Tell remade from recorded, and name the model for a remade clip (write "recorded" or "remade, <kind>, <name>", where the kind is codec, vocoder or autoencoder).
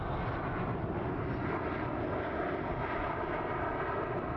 recorded